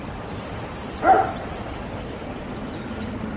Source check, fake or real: real